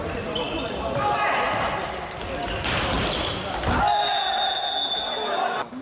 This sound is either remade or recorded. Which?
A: recorded